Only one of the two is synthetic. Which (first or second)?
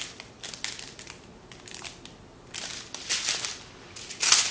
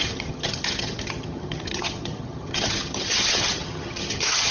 second